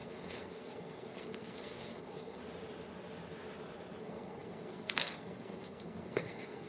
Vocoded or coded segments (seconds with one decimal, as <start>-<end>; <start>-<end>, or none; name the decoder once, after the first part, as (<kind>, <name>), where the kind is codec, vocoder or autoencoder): 0.0-2.4 (codec, SNAC); 4.0-6.7